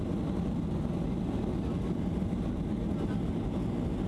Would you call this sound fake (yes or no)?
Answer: no